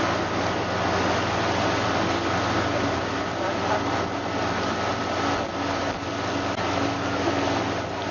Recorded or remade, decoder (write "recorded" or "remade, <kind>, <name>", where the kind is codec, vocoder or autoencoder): recorded